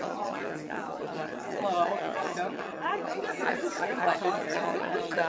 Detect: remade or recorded remade